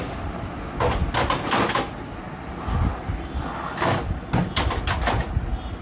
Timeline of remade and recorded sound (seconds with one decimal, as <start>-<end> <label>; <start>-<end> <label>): 0.0-5.8 recorded